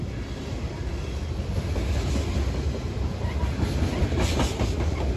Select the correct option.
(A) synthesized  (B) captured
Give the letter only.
B